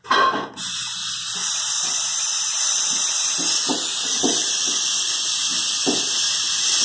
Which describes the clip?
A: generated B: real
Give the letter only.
B